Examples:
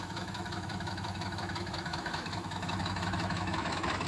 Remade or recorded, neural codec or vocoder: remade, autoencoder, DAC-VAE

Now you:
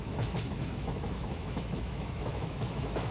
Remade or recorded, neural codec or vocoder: remade, autoencoder, DAC-VAE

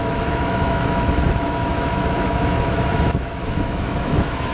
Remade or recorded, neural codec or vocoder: remade, autoencoder, DAC-VAE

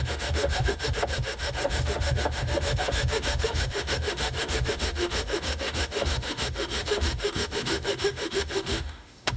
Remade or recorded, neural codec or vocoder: remade, autoencoder, DAC-VAE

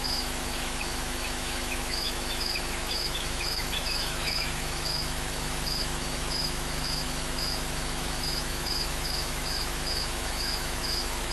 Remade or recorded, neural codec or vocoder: remade, autoencoder, DAC-VAE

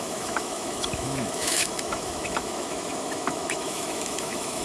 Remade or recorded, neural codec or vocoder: remade, autoencoder, DAC-VAE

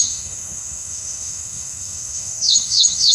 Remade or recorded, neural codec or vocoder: remade, autoencoder, DAC-VAE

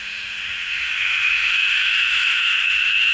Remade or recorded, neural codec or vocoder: remade, autoencoder, DAC-VAE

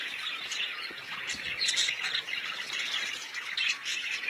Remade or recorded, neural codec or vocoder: recorded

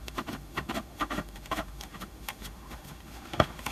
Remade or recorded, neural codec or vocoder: remade, autoencoder, DAC-VAE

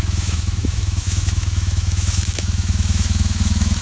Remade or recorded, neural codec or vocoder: remade, autoencoder, DAC-VAE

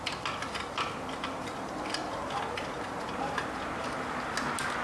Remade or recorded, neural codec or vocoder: recorded